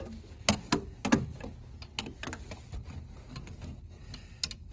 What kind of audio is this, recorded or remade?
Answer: recorded